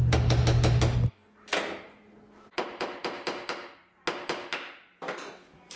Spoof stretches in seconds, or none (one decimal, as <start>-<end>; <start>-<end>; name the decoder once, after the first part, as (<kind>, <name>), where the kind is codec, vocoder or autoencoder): none